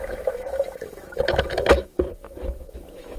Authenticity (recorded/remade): remade